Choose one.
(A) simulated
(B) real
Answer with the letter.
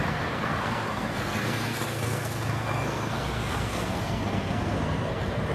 A